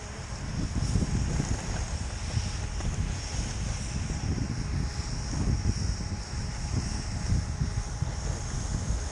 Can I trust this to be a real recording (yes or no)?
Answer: yes